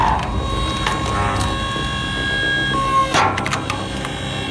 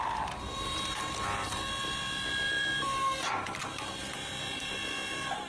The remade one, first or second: second